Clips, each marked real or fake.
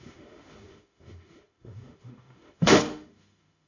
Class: fake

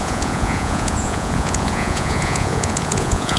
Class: fake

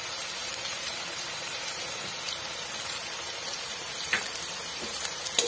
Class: fake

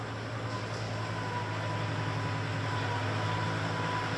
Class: real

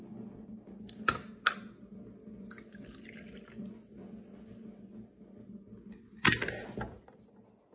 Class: real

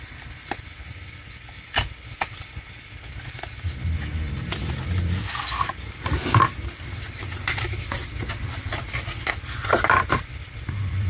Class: real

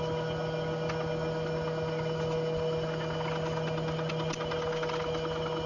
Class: real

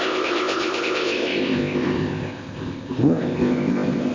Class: fake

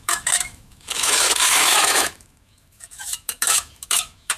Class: fake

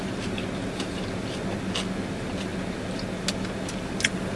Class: real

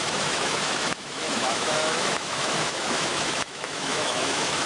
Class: fake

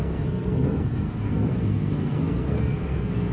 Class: fake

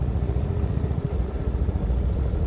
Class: fake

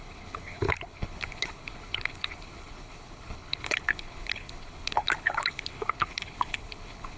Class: fake